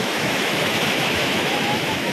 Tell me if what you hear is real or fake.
fake